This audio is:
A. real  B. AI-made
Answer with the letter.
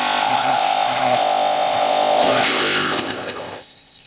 B